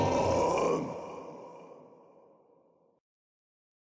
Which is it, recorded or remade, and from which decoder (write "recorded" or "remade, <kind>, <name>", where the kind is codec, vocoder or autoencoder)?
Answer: recorded